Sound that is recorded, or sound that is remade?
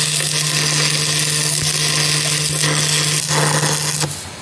recorded